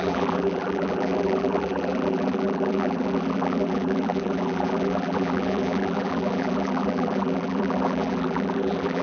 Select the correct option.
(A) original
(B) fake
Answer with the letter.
B